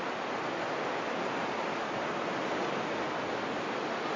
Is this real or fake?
real